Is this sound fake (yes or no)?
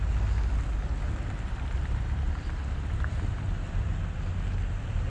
no